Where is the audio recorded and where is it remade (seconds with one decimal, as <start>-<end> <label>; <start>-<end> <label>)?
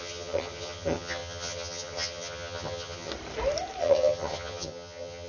0.0-3.1 remade; 3.1-3.8 recorded; 3.8-5.3 remade